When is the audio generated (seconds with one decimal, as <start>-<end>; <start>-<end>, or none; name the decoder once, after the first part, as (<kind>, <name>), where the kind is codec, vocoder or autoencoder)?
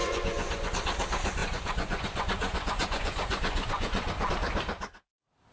0.0-0.7 (vocoder, Vocos); 1.4-4.3